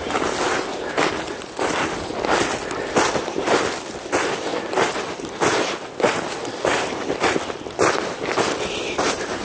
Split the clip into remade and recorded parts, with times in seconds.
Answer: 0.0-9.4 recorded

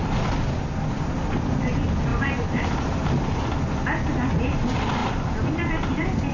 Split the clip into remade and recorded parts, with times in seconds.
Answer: 0.0-2.1 recorded; 2.1-3.1 remade; 3.1-6.3 recorded

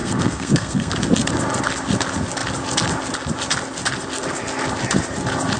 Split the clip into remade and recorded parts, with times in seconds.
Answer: 0.0-0.9 remade; 0.9-5.6 recorded

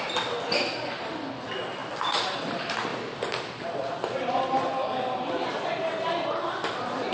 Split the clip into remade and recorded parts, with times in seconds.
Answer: 0.0-7.1 recorded

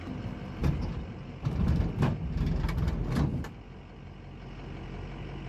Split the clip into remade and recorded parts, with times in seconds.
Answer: 0.0-5.5 recorded

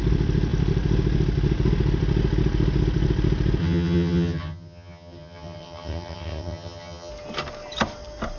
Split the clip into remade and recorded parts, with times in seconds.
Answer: 0.0-3.6 recorded; 3.6-7.1 remade; 7.1-8.4 recorded

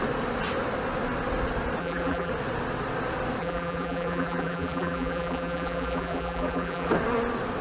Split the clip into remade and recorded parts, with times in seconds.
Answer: 0.0-1.8 recorded; 1.8-2.3 remade; 2.3-3.4 recorded; 3.4-6.9 remade; 6.9-7.6 recorded

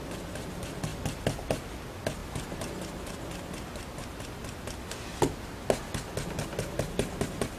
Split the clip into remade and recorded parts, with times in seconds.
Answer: 0.0-7.6 recorded